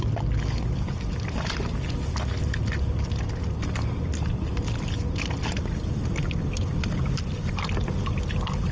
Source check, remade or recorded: recorded